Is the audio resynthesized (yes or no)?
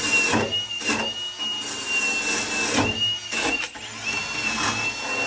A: no